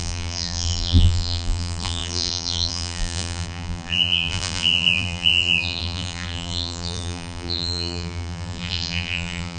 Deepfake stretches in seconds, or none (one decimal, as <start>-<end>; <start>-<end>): 0.0-9.6